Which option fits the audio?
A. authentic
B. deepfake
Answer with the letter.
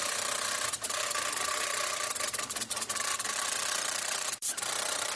B